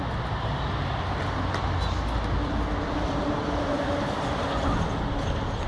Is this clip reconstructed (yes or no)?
no